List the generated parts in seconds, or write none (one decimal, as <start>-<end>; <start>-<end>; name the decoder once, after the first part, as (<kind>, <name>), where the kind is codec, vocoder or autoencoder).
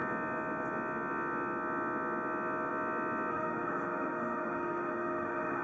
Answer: 3.3-5.6 (autoencoder, DAC-VAE)